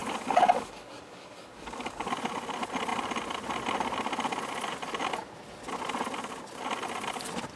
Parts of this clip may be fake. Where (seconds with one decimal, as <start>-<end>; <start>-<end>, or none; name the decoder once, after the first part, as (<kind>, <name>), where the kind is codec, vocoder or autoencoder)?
0.0-2.1 (codec, DAC)